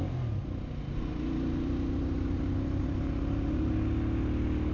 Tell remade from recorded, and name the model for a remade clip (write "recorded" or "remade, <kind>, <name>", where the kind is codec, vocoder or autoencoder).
recorded